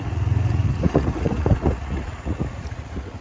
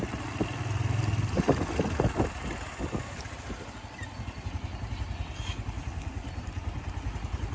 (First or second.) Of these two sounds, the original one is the second